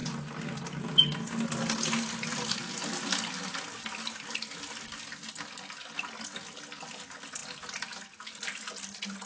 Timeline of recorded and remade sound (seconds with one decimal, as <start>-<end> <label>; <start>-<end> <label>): 0.0-9.3 recorded